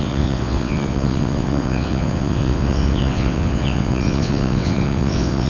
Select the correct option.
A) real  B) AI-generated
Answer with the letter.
B